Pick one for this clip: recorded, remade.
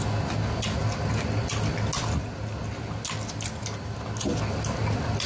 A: recorded